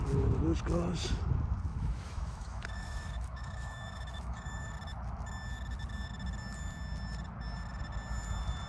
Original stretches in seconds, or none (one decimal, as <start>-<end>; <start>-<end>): 0.0-1.7; 4.7-8.7